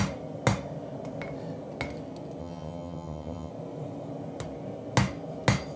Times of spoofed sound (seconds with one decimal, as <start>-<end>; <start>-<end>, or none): 2.4-3.5